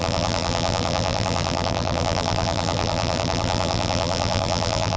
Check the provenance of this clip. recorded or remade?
remade